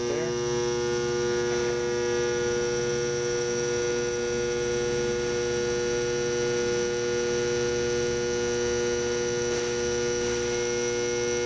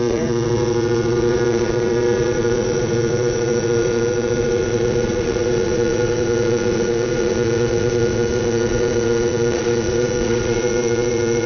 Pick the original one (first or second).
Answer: first